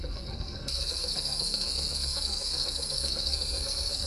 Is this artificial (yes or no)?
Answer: yes